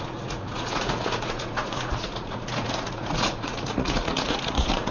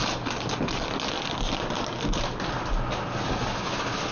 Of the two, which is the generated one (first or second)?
first